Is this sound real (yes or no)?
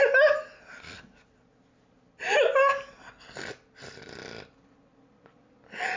yes